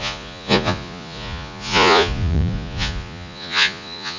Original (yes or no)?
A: no